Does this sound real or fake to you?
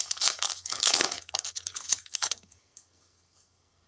fake